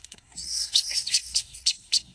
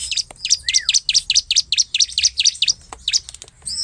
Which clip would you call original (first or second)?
second